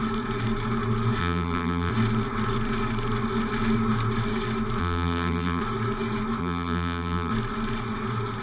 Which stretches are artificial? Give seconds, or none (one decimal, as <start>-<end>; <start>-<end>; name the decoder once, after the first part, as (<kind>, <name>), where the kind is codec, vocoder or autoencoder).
1.2-1.9 (vocoder, BigVGAN v2); 4.8-5.6; 6.4-7.3